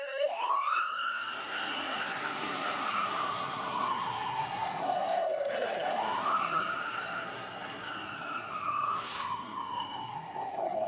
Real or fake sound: fake